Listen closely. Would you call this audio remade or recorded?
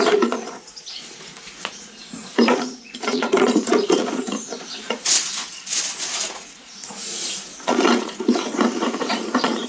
remade